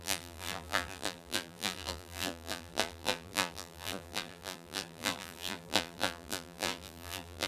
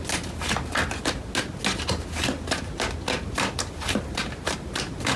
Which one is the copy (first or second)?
first